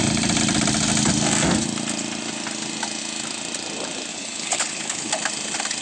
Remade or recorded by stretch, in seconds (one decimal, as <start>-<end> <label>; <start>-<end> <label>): 0.0-4.1 recorded; 4.1-5.1 remade; 5.1-5.8 recorded